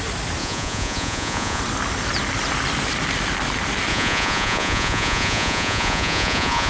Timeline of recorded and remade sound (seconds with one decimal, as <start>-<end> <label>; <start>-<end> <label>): 0.0-0.4 recorded; 0.4-1.6 remade; 1.6-3.9 recorded; 3.9-6.7 remade